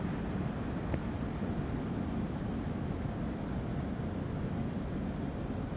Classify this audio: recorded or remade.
recorded